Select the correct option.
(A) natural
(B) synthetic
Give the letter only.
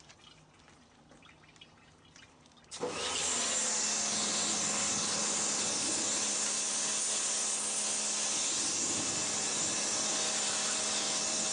A